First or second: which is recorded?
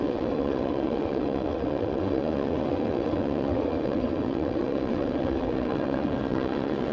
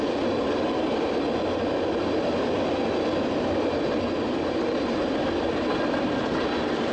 second